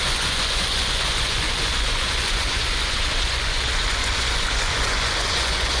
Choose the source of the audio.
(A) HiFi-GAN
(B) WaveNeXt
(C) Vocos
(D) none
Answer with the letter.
C